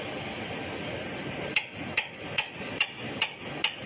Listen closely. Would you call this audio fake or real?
real